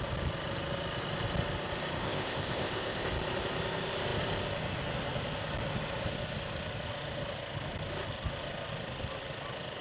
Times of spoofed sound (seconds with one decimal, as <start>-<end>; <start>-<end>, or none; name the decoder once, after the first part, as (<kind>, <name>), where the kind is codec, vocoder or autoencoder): 2.0-3.1 (codec, ZipCodec)